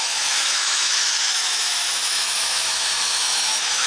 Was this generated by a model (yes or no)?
yes